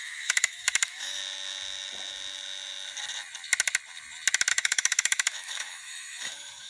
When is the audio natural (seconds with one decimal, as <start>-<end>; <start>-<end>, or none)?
1.2-4.5